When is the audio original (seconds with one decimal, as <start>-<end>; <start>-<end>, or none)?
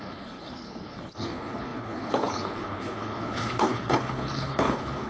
none